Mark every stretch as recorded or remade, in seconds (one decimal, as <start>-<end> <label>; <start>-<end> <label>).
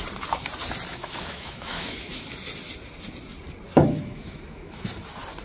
0.0-0.9 recorded; 0.9-2.2 remade; 2.2-3.7 recorded; 3.7-4.8 remade; 4.8-5.4 recorded